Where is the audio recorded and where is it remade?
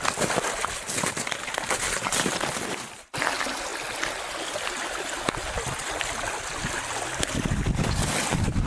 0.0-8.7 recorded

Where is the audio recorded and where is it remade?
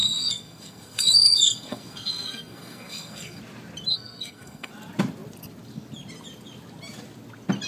0.0-3.4 remade; 3.4-3.9 recorded; 3.9-4.7 remade; 4.7-7.7 recorded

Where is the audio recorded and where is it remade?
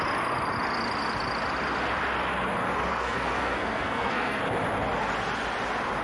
0.0-2.9 recorded; 2.9-4.4 remade; 4.4-6.0 recorded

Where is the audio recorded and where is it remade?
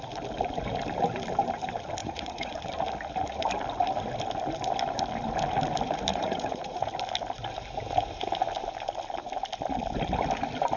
0.0-2.0 recorded; 2.0-2.5 remade; 2.5-6.1 recorded; 6.1-6.9 remade; 6.9-10.8 recorded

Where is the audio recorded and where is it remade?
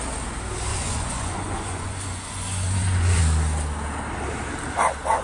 0.0-0.7 recorded; 0.7-3.2 remade; 3.2-5.2 recorded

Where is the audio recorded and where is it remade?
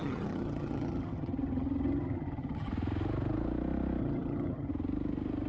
0.0-2.7 remade; 2.7-4.0 recorded; 4.0-4.7 remade; 4.7-5.5 recorded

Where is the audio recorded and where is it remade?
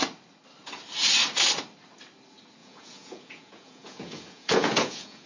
0.0-2.6 recorded; 2.6-5.3 remade